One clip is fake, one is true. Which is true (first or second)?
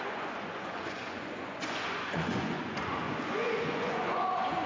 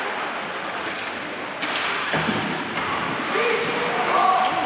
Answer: second